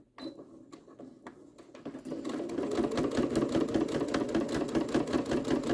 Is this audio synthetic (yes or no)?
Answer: no